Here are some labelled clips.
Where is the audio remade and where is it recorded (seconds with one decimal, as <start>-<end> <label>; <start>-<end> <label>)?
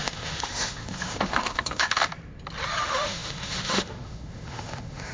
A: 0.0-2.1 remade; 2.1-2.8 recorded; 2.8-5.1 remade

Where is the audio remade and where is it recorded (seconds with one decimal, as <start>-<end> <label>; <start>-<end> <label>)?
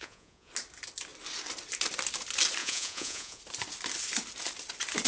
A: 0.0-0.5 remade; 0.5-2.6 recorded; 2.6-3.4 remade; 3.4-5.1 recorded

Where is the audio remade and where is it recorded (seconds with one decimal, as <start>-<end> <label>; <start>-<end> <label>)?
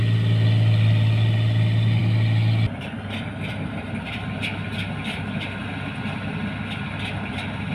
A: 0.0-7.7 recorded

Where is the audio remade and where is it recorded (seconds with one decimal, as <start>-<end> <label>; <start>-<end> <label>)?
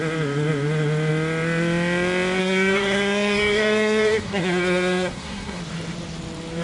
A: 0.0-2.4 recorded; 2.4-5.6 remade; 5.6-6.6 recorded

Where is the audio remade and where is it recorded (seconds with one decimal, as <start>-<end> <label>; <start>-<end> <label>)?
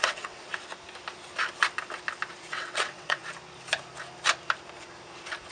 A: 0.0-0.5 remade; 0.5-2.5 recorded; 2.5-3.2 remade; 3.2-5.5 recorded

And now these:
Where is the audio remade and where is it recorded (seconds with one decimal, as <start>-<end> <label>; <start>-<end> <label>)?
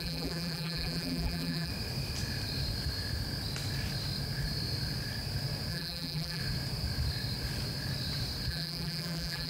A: 0.0-1.7 remade; 1.7-5.7 recorded; 5.7-6.4 remade; 6.4-8.5 recorded; 8.5-9.5 remade